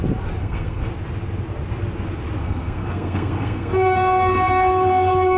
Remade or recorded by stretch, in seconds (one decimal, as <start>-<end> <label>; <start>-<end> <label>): 0.0-0.4 recorded; 0.4-0.9 remade; 0.9-2.4 recorded; 2.4-5.4 remade